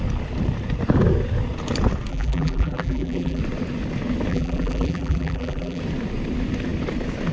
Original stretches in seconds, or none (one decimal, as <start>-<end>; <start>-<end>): 0.0-2.1; 3.4-4.3; 5.8-7.3